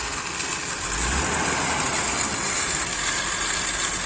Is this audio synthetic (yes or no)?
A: no